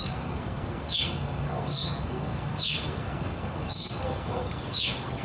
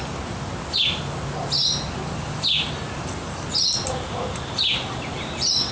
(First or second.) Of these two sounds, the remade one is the first